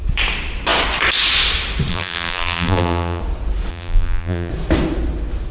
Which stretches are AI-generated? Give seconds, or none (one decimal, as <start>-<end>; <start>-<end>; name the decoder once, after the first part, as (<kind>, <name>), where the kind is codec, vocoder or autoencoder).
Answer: 1.9-3.2 (vocoder, BigVGAN v2); 3.7-4.5